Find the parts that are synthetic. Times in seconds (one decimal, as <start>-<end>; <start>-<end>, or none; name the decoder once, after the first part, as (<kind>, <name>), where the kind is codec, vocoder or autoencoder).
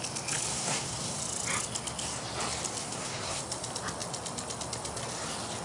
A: 0.5-1.2 (codec, SNAC); 2.8-3.4